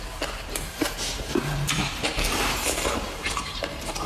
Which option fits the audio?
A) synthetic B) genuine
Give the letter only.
A